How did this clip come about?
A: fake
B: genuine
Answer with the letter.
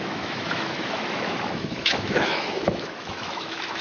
A